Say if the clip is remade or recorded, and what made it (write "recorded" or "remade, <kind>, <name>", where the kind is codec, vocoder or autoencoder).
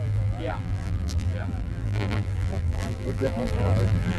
remade, vocoder, BigVGAN v2